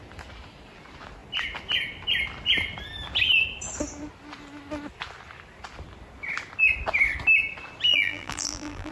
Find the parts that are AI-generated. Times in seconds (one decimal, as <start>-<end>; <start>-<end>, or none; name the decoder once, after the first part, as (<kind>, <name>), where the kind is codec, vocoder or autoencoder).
7.9-8.9 (vocoder, BigVGAN v2)